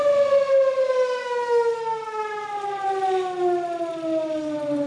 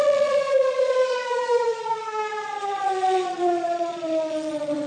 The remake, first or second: second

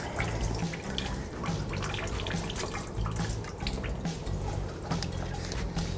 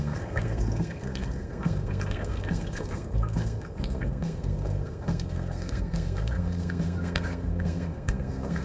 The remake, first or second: second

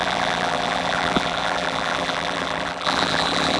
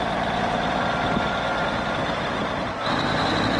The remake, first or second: first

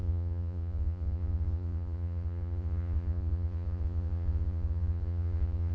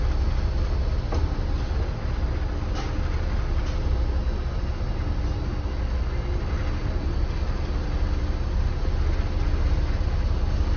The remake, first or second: first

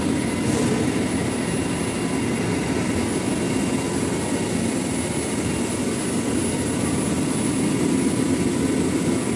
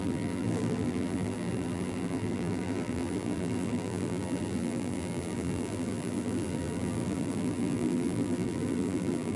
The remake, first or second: second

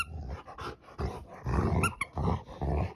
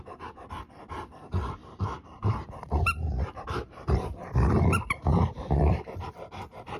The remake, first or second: second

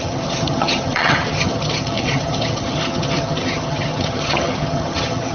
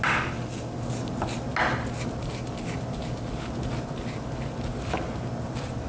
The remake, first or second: first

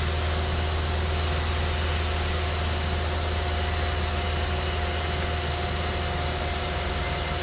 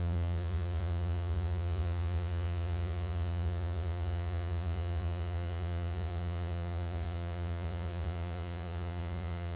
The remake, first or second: second